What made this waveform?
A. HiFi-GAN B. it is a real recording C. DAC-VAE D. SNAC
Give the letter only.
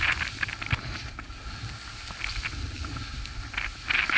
B